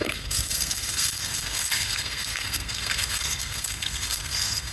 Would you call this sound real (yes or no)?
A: no